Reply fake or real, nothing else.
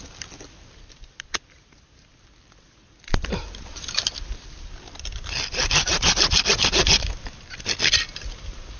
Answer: real